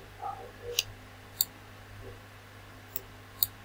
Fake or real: real